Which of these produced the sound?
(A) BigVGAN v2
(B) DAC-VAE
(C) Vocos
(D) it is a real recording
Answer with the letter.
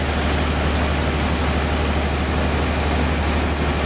D